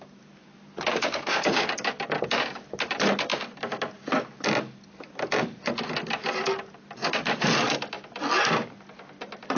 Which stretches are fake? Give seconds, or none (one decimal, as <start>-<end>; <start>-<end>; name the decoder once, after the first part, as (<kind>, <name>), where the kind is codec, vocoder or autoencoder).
0.9-1.7 (codec, DAC)